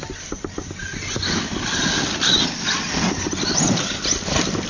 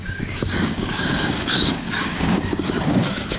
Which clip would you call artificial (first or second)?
second